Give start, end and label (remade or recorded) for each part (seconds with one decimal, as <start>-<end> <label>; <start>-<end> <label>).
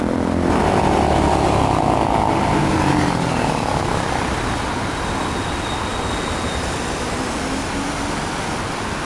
0.0-9.0 recorded